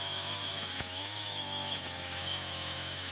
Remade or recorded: remade